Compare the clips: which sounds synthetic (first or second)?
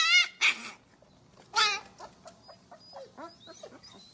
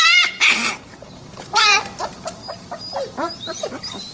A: second